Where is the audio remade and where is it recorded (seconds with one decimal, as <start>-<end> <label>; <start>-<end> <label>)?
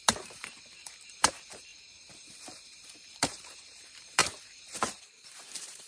0.0-1.7 remade; 1.7-2.9 recorded; 2.9-5.9 remade